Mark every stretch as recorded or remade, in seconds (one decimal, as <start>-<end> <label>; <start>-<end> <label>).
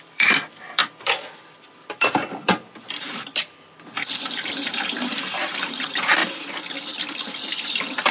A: 0.0-0.8 remade; 0.8-4.5 recorded; 4.5-8.1 remade